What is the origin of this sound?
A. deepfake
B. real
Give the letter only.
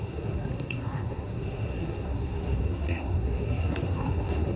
A